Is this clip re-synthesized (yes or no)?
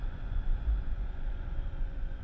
yes